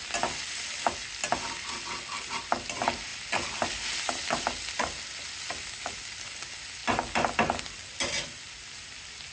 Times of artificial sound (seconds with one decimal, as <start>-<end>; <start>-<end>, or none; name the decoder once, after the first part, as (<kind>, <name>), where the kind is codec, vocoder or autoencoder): none